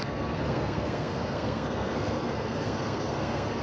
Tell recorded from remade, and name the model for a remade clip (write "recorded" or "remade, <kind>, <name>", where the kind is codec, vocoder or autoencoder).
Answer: remade, codec, SNAC